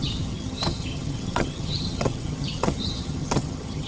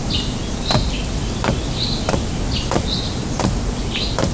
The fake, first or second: first